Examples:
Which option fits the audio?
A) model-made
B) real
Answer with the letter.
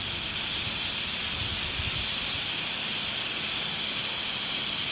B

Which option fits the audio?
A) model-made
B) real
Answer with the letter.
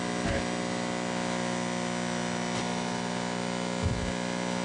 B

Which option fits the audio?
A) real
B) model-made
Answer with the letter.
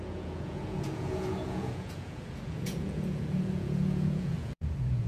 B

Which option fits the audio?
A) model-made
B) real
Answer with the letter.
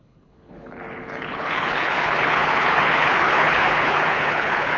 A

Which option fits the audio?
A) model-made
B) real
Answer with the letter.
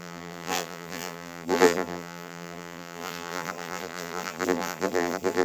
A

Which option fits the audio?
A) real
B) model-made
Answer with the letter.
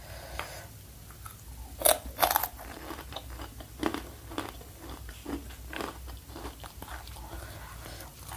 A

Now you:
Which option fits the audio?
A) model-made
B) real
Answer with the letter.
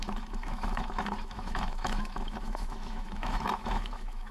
A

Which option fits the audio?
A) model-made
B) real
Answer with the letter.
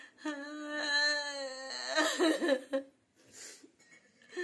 B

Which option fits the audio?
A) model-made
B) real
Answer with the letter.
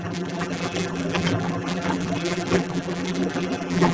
A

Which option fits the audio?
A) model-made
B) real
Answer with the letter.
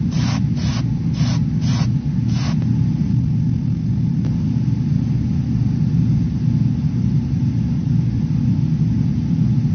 B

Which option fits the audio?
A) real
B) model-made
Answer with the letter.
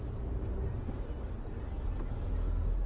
A